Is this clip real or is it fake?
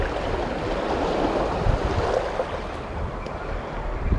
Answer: real